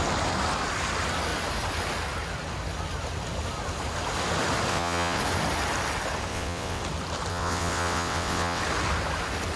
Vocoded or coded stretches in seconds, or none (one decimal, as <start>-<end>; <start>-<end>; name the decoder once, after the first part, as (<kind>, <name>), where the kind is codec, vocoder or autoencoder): 4.7-5.2 (vocoder, WaveNeXt); 6.3-6.8; 7.3-8.6